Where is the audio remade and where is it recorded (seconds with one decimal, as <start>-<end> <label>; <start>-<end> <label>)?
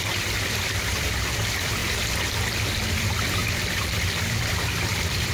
0.0-1.8 remade; 1.8-2.9 recorded; 2.9-5.3 remade